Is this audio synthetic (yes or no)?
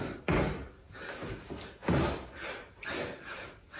no